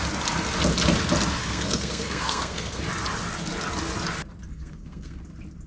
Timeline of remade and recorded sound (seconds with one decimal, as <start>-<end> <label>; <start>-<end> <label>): 0.0-1.4 recorded; 1.4-2.8 remade; 2.8-4.5 recorded; 4.5-5.2 remade; 5.2-5.7 recorded